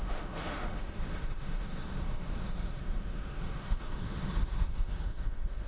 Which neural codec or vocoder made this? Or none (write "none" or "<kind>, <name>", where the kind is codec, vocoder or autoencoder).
autoencoder, DAC-VAE